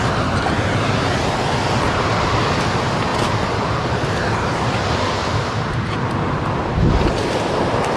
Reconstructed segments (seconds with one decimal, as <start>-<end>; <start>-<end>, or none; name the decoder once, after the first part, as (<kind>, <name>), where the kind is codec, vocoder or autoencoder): none